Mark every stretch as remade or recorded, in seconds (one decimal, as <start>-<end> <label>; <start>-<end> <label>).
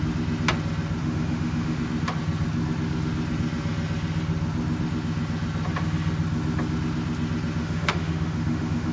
0.0-1.0 recorded; 1.0-1.8 remade; 1.8-7.6 recorded; 7.6-8.9 remade